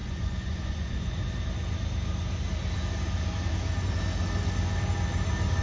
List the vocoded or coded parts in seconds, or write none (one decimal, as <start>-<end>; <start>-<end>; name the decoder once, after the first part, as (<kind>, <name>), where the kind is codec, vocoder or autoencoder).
0.0-1.2 (vocoder, Vocos)

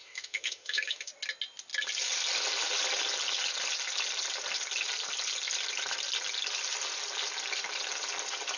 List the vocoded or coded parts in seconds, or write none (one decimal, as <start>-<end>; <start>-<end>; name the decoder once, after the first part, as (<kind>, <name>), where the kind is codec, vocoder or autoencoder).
0.0-1.1 (autoencoder, DAC-VAE)

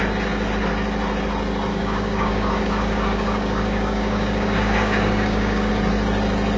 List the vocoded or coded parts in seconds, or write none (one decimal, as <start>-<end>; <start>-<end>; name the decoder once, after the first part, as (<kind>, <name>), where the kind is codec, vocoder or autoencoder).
1.7-5.7 (codec, DAC)

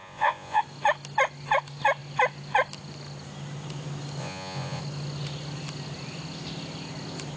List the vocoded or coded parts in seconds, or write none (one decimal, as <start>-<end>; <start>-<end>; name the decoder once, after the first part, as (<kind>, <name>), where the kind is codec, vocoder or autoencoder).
0.0-0.6 (vocoder, Vocos); 4.2-4.8